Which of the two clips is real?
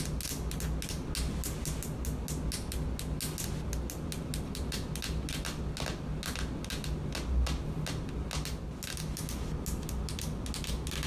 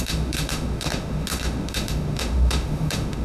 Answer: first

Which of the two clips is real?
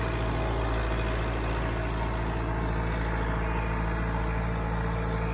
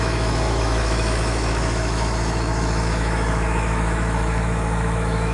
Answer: first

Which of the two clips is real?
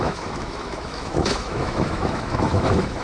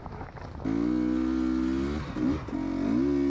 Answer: second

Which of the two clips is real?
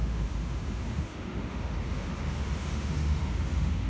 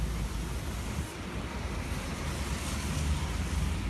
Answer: second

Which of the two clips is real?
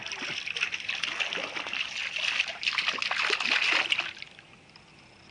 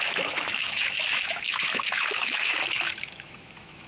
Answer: first